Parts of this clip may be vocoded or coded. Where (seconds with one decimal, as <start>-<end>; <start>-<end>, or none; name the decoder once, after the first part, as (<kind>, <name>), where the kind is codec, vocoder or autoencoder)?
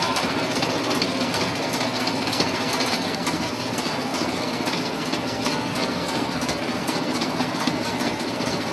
0.0-8.7 (codec, SNAC)